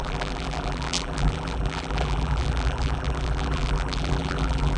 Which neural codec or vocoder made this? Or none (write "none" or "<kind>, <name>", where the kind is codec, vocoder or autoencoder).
vocoder, BigVGAN v2